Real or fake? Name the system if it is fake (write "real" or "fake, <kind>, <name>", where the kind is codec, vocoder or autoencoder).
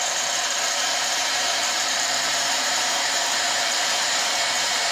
fake, vocoder, BigVGAN v2